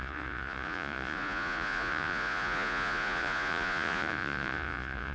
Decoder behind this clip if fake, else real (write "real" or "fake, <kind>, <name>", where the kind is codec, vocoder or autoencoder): fake, vocoder, Vocos